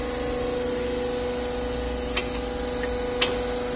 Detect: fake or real real